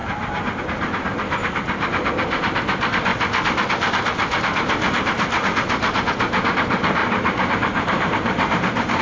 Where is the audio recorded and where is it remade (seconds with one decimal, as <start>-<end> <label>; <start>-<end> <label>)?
0.0-0.6 remade; 0.6-7.0 recorded; 7.0-9.0 remade